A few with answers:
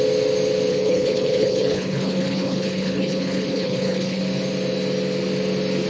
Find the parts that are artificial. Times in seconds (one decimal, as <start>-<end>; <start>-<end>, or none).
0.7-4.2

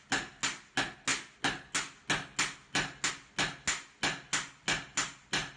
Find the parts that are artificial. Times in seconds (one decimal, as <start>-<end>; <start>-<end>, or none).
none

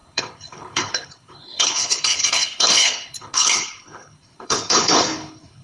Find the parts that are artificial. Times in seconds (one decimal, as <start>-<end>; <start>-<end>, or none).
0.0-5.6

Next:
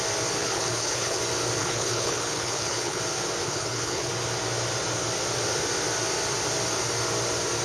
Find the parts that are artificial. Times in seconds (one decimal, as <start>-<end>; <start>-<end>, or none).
0.4-1.2; 1.6-3.0; 3.4-4.1